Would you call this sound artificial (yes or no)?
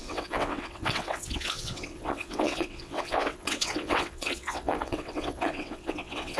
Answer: yes